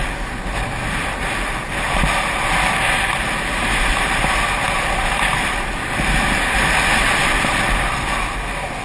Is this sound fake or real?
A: real